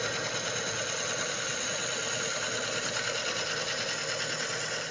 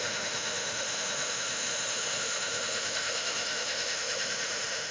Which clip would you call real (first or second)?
first